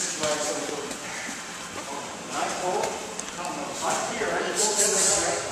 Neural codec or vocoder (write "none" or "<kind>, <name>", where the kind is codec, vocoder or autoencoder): none